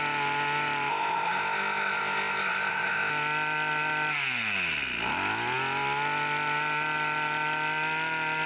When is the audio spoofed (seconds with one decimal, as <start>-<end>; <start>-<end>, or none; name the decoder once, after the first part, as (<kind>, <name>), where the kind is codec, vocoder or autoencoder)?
0.9-3.1 (codec, ZipCodec)